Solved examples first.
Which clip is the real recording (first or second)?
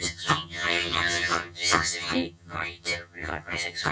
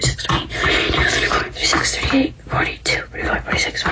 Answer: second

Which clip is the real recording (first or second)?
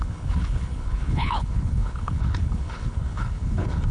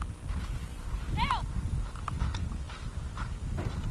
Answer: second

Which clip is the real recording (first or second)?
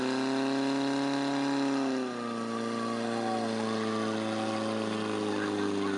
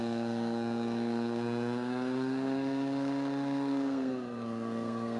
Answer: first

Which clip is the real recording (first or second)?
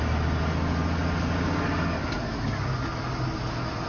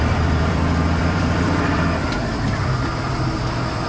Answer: first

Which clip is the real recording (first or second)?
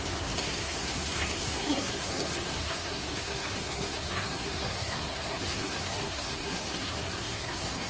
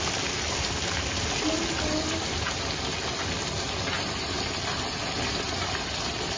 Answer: second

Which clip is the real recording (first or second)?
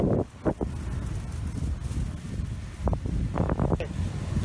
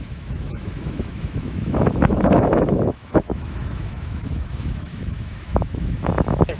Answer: first